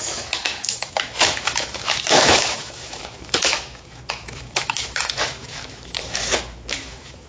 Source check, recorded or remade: remade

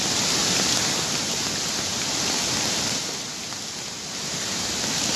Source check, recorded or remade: recorded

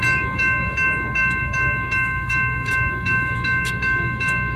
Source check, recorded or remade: remade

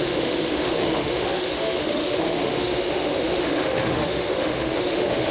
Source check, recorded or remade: remade